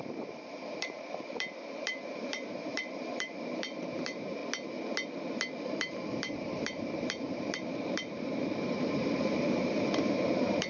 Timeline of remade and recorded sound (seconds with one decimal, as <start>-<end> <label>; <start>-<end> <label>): 0.0-4.4 remade; 4.4-5.6 recorded; 5.6-10.7 remade